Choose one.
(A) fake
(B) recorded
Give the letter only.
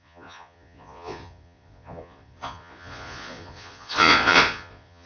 A